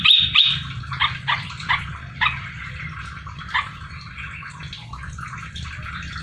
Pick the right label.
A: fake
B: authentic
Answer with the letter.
A